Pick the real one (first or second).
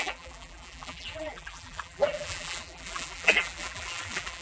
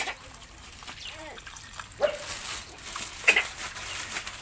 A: second